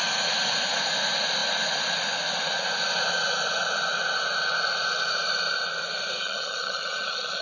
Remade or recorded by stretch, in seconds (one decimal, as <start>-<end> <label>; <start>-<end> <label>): 0.0-6.2 recorded; 6.2-7.4 remade